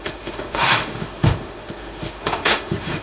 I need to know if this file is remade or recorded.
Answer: remade